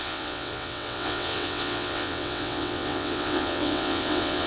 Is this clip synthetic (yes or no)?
yes